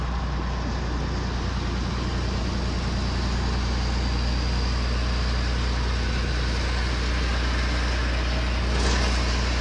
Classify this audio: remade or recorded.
recorded